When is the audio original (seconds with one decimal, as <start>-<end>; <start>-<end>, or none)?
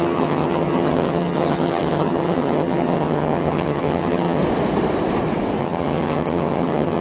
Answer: 4.4-5.6